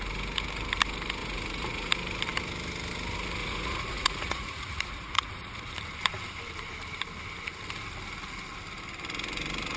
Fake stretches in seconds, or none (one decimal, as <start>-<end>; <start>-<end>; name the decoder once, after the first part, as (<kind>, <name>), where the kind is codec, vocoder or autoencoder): 1.2-1.9 (vocoder, Vocos); 3.4-5.7